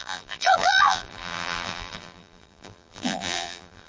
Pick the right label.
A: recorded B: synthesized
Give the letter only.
B